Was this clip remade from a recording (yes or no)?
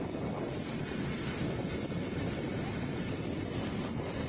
yes